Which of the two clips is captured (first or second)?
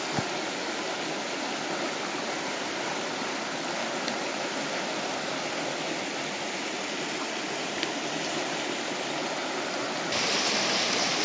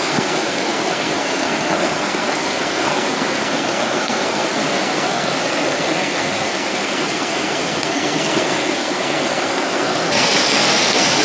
first